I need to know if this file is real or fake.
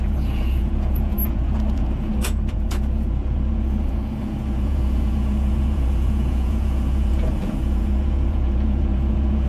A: fake